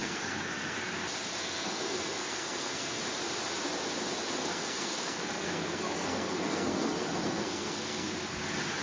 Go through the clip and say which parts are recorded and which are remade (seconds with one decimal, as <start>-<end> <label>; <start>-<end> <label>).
0.0-0.9 remade; 0.9-1.4 recorded; 1.4-3.0 remade; 3.0-4.5 recorded; 4.5-8.1 remade; 8.1-8.8 recorded